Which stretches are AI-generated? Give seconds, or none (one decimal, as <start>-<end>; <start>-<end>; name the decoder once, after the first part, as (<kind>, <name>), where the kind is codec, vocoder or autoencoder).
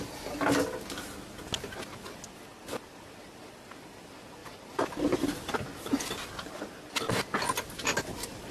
4.4-5.5 (vocoder, BigVGAN v2)